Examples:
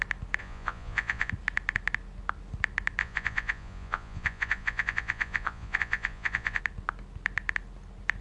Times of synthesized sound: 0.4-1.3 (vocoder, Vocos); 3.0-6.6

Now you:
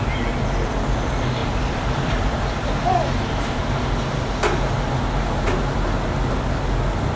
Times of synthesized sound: 1.4-2.5 (vocoder, BigVGAN v2)

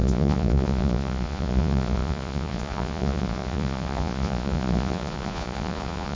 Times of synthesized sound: 0.0-6.1 (vocoder, Vocos)

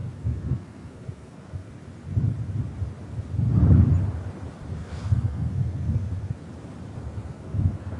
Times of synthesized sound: 0.0-1.7 (codec, SNAC); 4.8-6.4; 7.0-8.0

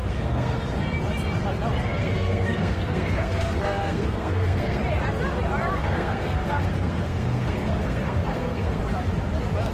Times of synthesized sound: 0.0-0.6 (codec, SNAC); 1.9-4.8; 5.8-8.8

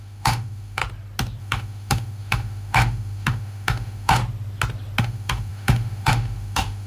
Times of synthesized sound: 0.0-0.8 (autoencoder, DAC-VAE); 1.4-4.2; 5.0-6.9